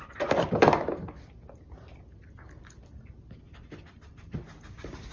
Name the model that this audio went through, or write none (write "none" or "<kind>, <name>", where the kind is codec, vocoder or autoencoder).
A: none